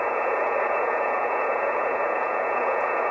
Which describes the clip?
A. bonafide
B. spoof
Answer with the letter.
B